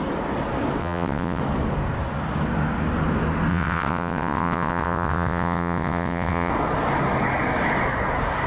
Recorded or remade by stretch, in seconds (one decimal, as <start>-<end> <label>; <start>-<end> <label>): 0.0-0.8 recorded; 0.8-1.4 remade; 1.4-3.5 recorded; 3.5-6.5 remade; 6.5-8.5 recorded